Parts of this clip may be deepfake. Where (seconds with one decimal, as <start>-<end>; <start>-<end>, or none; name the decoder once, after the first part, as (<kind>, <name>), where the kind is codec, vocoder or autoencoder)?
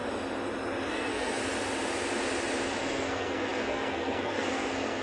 0.9-1.4 (codec, SNAC); 2.8-5.0